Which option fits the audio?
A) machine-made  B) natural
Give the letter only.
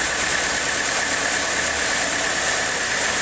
B